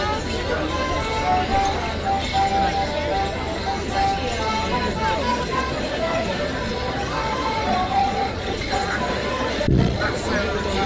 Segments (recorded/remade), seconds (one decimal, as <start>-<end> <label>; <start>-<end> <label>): 0.0-5.3 recorded; 5.3-10.2 remade; 10.2-10.9 recorded